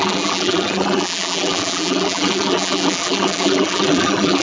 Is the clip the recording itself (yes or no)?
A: no